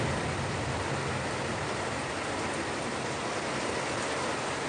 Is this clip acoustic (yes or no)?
yes